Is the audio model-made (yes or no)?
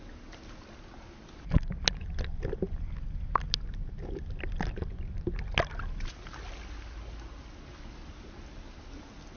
no